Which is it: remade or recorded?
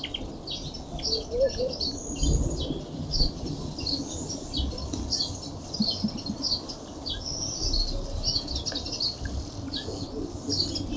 recorded